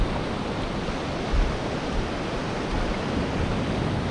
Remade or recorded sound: recorded